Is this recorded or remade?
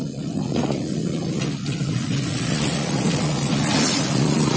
remade